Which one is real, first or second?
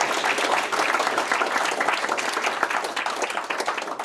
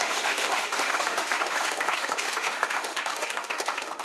first